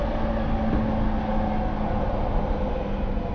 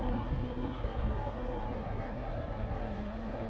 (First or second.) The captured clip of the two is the first